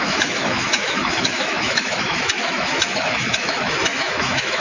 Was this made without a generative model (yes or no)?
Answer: no